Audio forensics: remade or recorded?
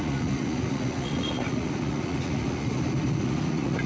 remade